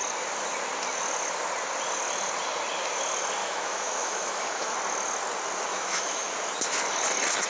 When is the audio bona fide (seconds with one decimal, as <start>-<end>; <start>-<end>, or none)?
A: 0.0-3.4; 4.7-5.7; 6.3-7.5